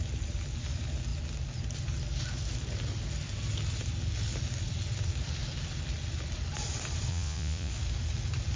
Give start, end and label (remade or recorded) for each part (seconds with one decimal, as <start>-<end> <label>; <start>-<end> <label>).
0.0-7.1 recorded; 7.1-7.7 remade; 7.7-8.6 recorded

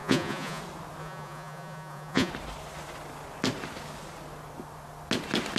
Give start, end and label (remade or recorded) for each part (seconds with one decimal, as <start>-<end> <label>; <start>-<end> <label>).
0.0-0.6 remade; 0.6-1.0 recorded; 1.0-2.3 remade; 2.3-5.6 recorded

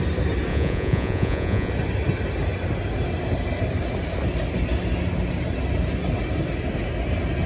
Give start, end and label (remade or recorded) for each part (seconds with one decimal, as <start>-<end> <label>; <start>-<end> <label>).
0.0-0.5 recorded; 0.5-1.7 remade; 1.7-7.5 recorded

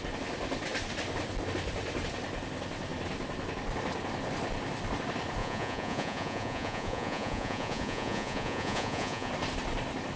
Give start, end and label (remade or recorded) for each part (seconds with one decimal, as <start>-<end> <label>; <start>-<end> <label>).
0.0-5.4 recorded; 5.4-9.3 remade; 9.3-10.2 recorded